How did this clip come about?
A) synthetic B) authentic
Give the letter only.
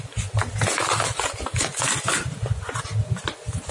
B